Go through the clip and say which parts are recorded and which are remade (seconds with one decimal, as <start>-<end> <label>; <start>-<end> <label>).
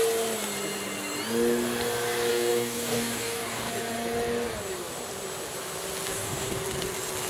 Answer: 0.0-2.3 recorded; 2.3-3.7 remade; 3.7-6.1 recorded; 6.1-6.6 remade; 6.6-7.3 recorded